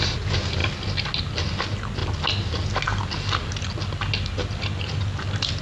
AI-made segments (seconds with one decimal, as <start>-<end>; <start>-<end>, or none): none